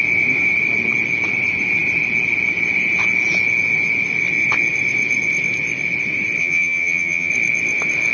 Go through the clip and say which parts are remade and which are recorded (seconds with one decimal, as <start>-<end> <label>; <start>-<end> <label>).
0.0-6.4 recorded; 6.4-7.3 remade; 7.3-8.1 recorded

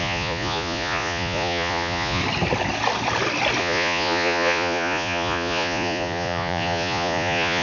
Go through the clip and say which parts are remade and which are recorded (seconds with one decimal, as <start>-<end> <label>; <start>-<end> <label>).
0.0-2.2 remade; 2.2-3.6 recorded; 3.6-7.6 remade

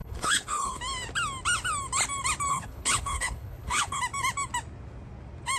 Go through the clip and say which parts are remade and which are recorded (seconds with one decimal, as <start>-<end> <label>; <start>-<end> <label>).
0.0-0.8 remade; 0.8-2.5 recorded; 2.5-4.0 remade; 4.0-5.6 recorded